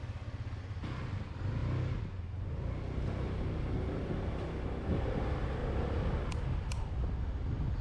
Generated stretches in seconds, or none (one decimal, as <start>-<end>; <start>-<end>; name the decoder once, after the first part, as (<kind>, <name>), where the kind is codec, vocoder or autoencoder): none